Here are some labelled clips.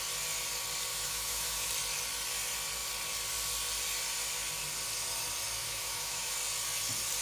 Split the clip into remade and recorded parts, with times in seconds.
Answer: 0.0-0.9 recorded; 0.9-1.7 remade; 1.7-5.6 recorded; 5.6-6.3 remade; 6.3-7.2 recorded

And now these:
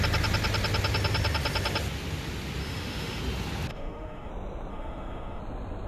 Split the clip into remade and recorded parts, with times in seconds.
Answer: 0.0-2.6 recorded; 2.6-3.2 remade; 3.2-3.7 recorded; 3.7-4.3 remade; 4.3-4.7 recorded; 4.7-5.4 remade; 5.4-5.9 recorded

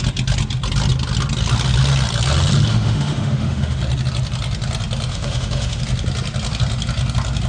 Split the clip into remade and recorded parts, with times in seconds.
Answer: 0.0-2.7 recorded; 2.7-3.8 remade; 3.8-5.1 recorded; 5.1-5.8 remade; 5.8-7.5 recorded

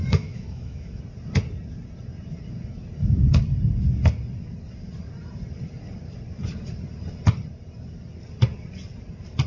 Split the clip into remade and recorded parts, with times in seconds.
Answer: 0.0-1.0 remade; 1.0-9.5 recorded

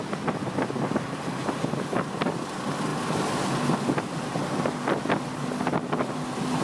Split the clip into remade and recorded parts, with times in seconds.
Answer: 0.0-6.6 recorded

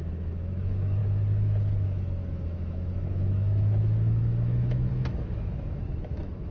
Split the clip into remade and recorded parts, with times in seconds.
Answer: 0.0-6.5 remade

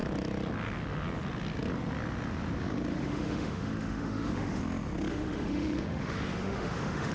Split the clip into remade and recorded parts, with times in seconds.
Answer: 0.0-2.9 recorded; 2.9-4.6 remade; 4.6-5.1 recorded; 5.1-7.1 remade